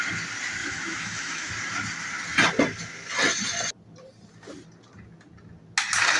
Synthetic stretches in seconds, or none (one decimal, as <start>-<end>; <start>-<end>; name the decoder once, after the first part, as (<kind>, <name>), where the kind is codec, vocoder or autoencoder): 0.6-1.5 (autoencoder, DAC-VAE)